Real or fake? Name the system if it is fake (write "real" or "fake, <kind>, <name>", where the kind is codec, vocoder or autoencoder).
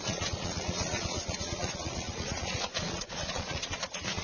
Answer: fake, vocoder, Vocos